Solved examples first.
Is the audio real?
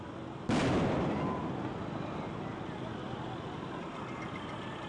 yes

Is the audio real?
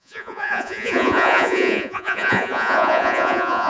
no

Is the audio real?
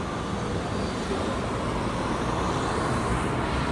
yes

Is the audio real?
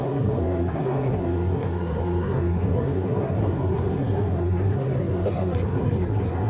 no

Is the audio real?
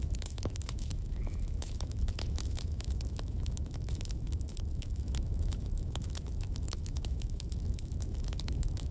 no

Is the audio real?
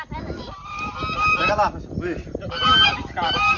yes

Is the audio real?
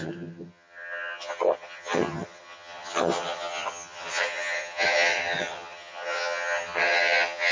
no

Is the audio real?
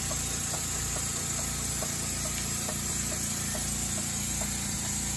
yes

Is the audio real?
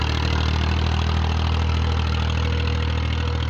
yes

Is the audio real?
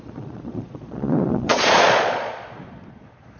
no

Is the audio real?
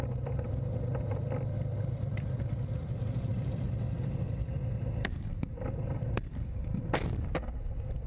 no